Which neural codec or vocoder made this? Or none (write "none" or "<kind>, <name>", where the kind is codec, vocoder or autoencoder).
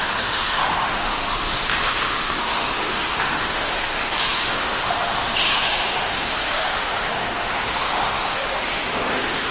autoencoder, DAC-VAE